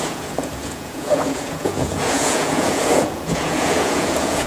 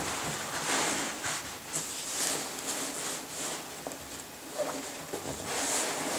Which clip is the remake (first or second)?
first